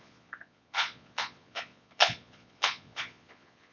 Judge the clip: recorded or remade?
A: remade